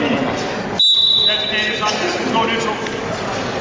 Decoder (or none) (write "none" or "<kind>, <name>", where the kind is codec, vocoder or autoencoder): none